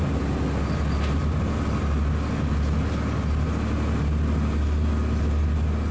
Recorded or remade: recorded